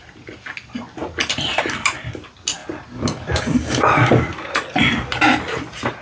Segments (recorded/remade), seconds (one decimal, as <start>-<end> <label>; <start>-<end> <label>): 0.0-1.0 recorded; 1.0-1.6 remade; 1.6-6.0 recorded